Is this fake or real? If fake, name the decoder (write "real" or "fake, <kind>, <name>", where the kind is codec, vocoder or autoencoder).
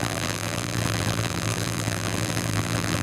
fake, vocoder, BigVGAN v2